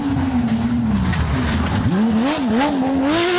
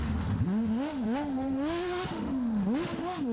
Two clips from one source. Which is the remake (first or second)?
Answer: second